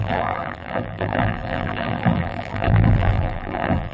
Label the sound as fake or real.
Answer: fake